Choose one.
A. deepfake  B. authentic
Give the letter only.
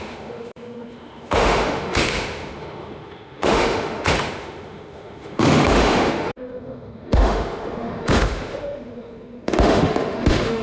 A